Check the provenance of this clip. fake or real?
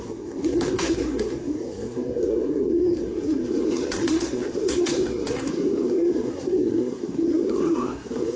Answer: fake